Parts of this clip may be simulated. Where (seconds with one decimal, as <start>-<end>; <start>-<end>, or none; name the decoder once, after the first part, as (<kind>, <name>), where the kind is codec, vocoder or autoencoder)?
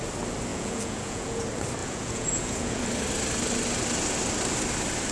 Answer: 0.5-1.4 (vocoder, Vocos); 1.8-2.8